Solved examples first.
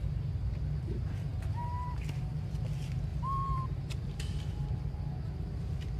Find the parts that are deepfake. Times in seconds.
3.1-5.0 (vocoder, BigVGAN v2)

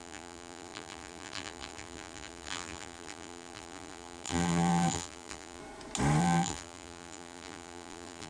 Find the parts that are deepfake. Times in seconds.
0.0-5.6 (vocoder, BigVGAN v2); 6.2-8.3

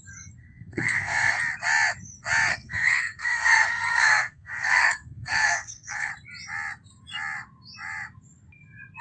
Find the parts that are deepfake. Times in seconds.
0.4-1.4 (codec, SNAC); 2.5-6.1

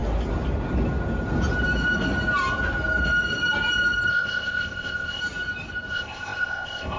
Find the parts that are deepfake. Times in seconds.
4.1-5.2 (codec, ZipCodec); 5.9-7.0